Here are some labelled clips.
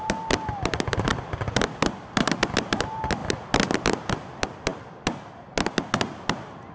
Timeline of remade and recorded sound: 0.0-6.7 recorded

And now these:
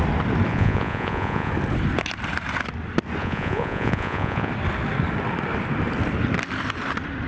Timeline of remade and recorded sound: 0.0-0.5 recorded; 0.5-1.5 remade; 1.5-3.2 recorded; 3.2-4.5 remade; 4.5-7.3 recorded